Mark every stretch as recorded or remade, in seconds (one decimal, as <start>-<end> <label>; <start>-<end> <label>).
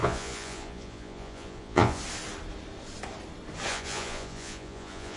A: 0.0-2.0 remade; 2.0-3.7 recorded; 3.7-5.2 remade